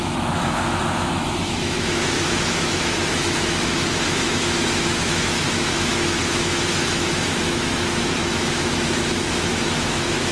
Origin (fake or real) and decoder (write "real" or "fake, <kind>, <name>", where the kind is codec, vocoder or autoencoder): fake, autoencoder, DAC-VAE